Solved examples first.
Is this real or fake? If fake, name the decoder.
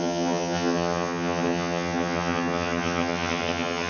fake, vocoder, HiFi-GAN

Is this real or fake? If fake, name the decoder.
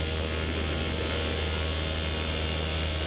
real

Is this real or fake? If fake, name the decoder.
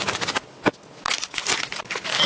real